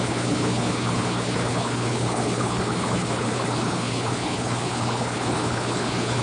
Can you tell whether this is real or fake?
fake